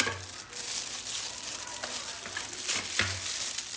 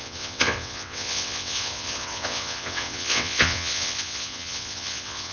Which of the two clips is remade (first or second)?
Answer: second